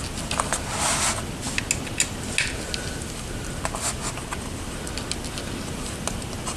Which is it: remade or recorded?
recorded